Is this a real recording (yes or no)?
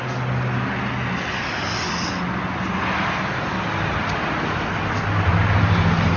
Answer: yes